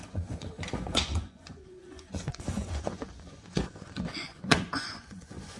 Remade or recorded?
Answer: remade